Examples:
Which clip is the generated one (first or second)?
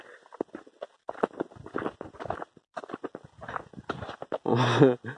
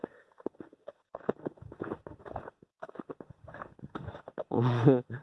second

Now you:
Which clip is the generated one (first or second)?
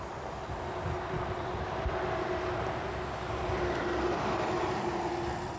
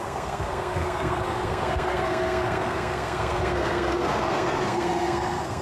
second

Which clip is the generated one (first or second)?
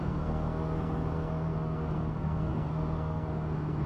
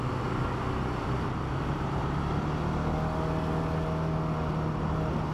first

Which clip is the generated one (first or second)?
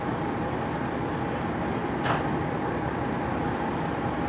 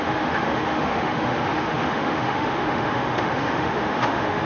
second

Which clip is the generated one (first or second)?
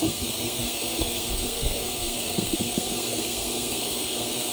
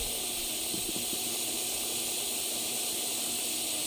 first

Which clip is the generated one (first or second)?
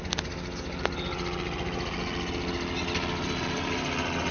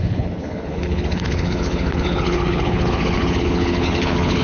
second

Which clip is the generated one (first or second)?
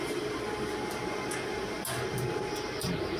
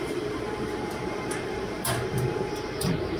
second